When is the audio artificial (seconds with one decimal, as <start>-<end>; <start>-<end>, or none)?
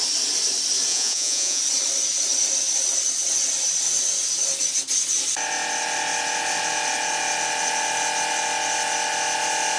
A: 0.9-1.6